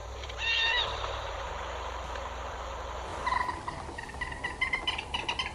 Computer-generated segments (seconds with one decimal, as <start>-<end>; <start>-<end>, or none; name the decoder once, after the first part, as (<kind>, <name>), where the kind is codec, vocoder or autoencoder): 0.0-1.5 (vocoder, BigVGAN v2)